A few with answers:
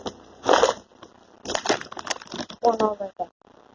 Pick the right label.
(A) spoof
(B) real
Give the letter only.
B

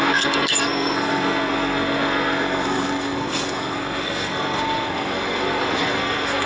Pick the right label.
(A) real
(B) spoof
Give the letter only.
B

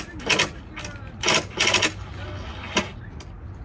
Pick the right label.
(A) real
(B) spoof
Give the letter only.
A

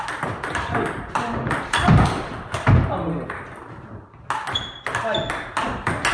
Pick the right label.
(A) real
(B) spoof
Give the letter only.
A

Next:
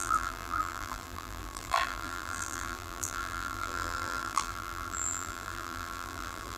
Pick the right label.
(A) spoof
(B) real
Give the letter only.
A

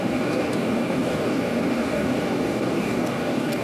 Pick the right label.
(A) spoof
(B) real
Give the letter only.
A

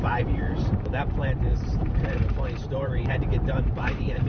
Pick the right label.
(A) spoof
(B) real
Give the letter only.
A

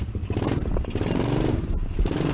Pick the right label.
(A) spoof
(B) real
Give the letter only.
B